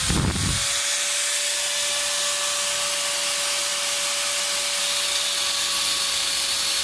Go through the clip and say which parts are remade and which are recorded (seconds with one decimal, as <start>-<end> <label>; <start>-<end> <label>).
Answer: 0.0-6.8 recorded